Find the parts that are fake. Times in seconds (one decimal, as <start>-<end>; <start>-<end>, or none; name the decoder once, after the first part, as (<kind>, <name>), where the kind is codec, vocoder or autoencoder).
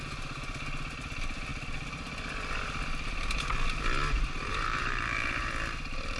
4.5-5.5 (vocoder, BigVGAN v2)